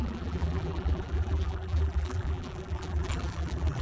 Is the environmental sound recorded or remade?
remade